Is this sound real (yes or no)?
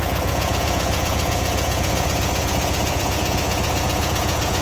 no